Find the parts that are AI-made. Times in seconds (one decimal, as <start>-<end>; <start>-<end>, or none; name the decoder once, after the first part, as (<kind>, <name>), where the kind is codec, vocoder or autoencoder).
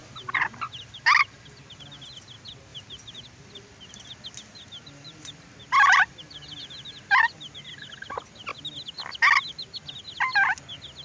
2.7-7.1 (vocoder, BigVGAN v2)